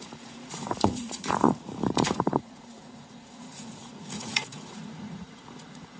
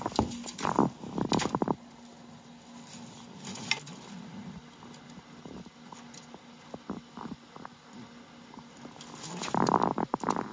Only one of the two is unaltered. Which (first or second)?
second